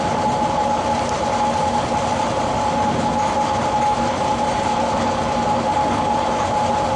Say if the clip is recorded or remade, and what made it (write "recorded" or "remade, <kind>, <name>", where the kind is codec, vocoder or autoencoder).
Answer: recorded